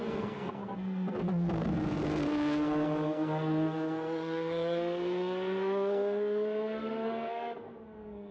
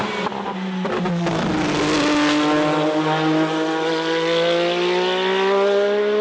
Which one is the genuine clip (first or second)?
second